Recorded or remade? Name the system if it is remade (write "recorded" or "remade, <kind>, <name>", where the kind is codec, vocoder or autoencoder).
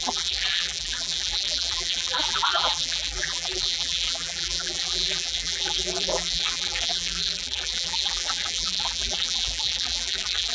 remade, vocoder, BigVGAN v2